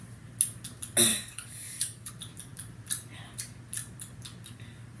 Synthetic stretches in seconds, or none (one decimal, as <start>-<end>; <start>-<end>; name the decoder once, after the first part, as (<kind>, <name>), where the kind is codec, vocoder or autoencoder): 1.1-2.1 (codec, DAC)